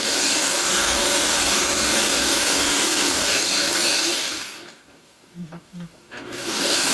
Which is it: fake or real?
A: fake